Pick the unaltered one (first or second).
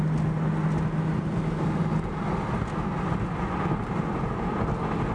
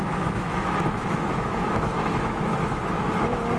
first